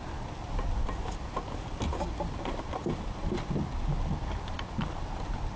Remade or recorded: recorded